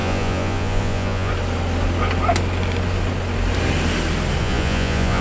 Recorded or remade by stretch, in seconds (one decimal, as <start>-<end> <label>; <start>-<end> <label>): 0.0-1.3 remade; 1.3-4.4 recorded; 4.4-5.2 remade